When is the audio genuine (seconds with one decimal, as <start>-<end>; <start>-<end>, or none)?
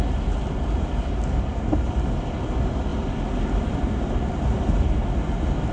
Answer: 0.0-2.9; 4.7-5.7